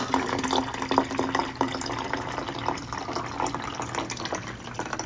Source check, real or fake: real